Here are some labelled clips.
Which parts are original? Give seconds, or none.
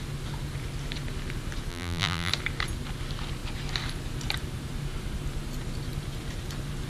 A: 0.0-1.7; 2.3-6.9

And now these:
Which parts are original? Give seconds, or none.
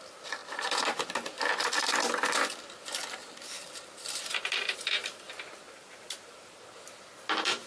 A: 0.0-3.2; 6.9-7.7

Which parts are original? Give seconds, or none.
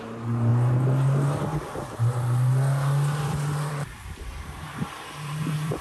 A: 0.5-3.7